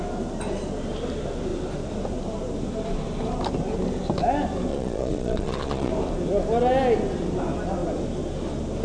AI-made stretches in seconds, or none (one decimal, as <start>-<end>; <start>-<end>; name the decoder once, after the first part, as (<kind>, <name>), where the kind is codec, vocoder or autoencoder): 4.7-5.9 (vocoder, Vocos)